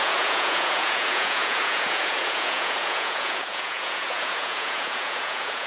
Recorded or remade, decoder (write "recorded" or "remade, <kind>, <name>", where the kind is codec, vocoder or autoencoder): remade, vocoder, Vocos